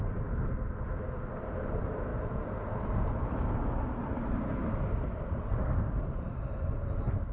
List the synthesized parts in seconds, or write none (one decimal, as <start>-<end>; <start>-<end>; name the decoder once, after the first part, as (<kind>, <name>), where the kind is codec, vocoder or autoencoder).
0.0-7.3 (vocoder, BigVGAN v2)